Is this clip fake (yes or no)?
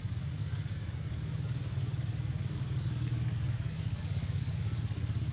yes